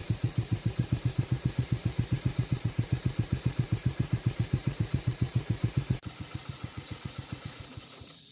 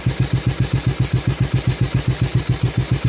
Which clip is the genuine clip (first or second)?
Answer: second